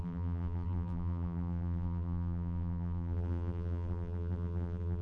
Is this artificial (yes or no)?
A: yes